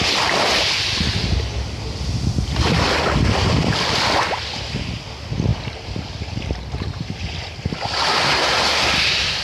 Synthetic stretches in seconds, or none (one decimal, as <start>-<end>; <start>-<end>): 5.5-7.8